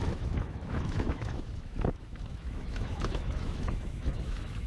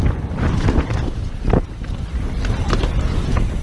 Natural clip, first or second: second